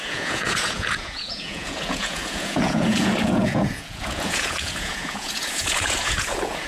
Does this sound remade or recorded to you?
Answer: remade